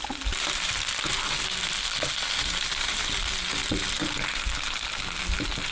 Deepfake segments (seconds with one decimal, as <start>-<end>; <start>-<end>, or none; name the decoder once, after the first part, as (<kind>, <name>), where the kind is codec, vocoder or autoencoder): 2.4-3.1 (vocoder, BigVGAN v2)